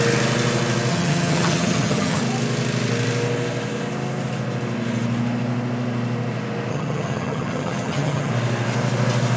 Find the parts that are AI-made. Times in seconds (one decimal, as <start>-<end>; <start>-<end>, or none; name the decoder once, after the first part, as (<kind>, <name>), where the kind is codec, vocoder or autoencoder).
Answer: 0.9-2.2 (vocoder, HiFi-GAN); 6.7-8.3